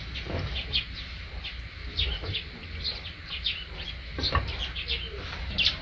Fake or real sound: real